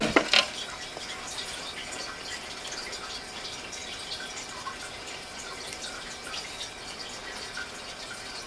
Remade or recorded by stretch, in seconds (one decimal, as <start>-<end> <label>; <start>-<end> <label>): 0.0-3.8 recorded; 3.8-6.6 remade; 6.6-8.5 recorded